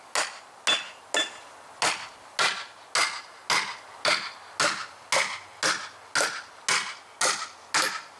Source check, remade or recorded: recorded